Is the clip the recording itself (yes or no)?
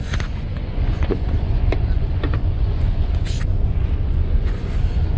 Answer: no